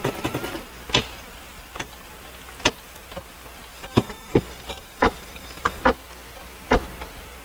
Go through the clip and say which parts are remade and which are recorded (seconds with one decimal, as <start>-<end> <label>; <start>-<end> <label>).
0.0-3.7 recorded; 3.7-5.8 remade; 5.8-7.4 recorded